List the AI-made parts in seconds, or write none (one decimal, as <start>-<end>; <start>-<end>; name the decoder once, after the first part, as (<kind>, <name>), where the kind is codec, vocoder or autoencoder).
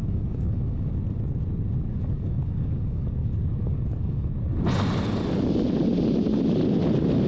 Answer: 0.0-0.9 (codec, DAC); 1.9-4.4